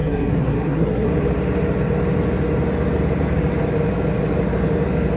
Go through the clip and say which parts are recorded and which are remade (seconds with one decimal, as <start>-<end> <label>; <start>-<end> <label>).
0.0-1.1 remade; 1.1-5.2 recorded